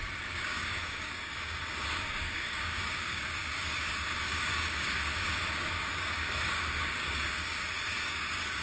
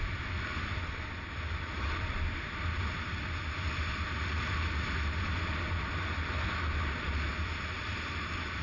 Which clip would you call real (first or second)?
second